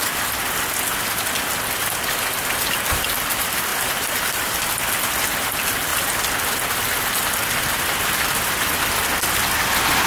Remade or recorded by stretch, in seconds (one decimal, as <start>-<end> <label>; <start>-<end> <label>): 0.0-3.7 recorded; 3.7-4.6 remade; 4.6-10.1 recorded